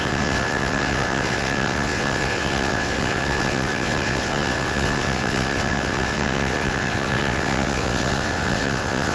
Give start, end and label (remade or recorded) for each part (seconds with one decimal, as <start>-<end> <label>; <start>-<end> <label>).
0.0-9.1 remade